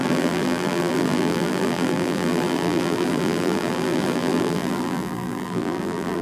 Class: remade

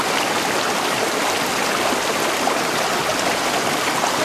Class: recorded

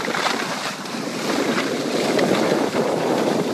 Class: remade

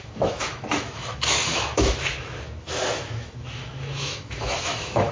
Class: remade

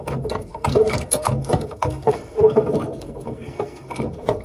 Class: remade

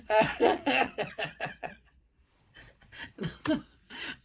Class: remade